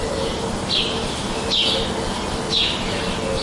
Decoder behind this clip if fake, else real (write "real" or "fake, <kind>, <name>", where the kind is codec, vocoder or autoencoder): real